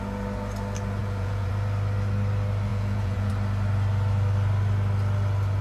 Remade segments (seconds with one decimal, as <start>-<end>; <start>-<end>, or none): 1.0-1.5; 2.7-3.3